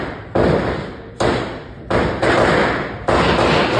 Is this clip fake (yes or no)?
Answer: no